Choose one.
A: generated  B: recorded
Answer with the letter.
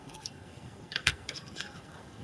A